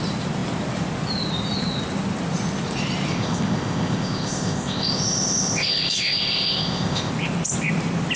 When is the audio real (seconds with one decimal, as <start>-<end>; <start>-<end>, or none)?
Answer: 0.0-3.1; 7.1-8.2